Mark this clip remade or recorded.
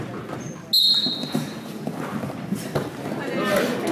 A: recorded